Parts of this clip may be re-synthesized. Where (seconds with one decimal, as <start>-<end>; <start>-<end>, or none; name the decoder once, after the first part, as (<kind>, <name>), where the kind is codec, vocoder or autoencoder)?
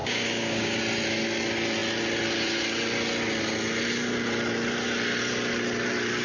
0.0-0.8 (codec, DAC)